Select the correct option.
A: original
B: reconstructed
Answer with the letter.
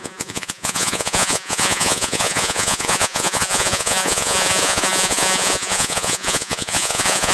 B